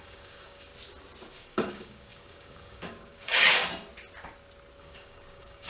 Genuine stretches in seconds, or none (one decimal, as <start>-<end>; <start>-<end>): 0.7-1.3; 3.6-4.8